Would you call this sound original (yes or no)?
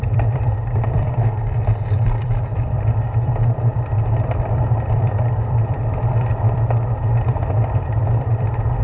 no